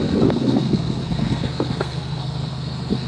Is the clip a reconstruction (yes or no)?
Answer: yes